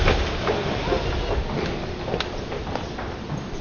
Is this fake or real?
real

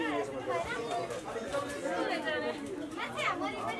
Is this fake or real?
real